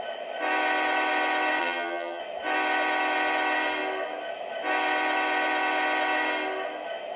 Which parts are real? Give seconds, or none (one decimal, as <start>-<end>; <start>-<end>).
0.0-1.6; 2.2-7.2